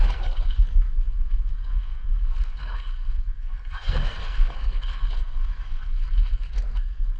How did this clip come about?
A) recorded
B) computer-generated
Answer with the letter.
B